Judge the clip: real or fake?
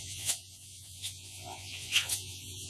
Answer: fake